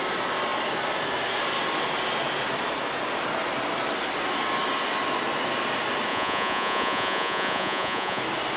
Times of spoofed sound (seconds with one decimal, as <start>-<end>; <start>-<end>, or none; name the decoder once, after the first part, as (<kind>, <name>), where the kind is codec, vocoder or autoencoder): 6.1-8.2 (vocoder, Vocos)